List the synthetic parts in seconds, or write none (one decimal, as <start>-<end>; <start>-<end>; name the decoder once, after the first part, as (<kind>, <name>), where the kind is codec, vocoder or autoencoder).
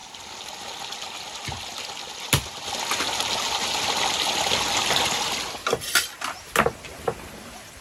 none